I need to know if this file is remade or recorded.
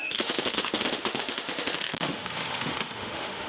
remade